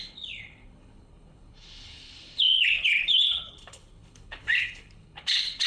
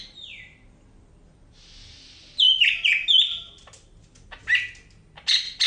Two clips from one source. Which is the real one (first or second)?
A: second